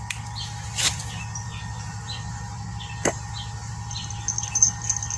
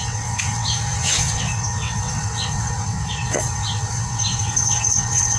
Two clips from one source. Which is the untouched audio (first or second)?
first